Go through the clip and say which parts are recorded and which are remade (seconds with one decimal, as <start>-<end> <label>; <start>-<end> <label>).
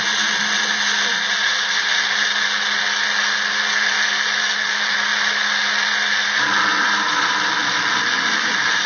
0.0-8.9 recorded